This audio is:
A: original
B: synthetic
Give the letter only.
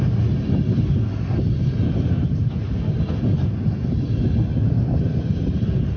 A